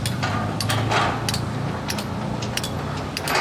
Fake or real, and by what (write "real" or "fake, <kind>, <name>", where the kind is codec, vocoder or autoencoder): real